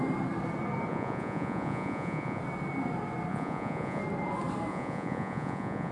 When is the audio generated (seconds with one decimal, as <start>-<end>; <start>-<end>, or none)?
0.9-2.4; 3.3-4.0; 4.7-5.9